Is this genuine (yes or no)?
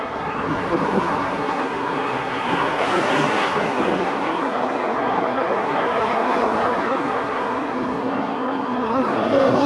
no